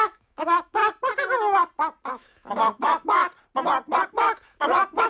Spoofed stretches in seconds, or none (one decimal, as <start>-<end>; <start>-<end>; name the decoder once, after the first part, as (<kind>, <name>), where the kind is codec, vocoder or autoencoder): 0.0-0.8 (autoencoder, DAC-VAE); 2.1-3.2; 4.1-5.1